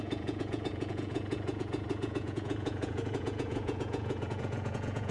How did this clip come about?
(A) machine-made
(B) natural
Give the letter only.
A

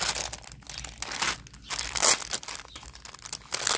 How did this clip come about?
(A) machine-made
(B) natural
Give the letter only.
B